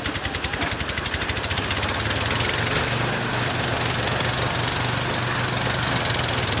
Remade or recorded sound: recorded